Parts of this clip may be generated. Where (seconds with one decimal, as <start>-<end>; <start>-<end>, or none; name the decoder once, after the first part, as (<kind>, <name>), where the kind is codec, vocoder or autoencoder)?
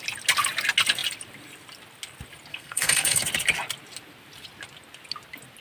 2.5-3.2 (codec, SNAC)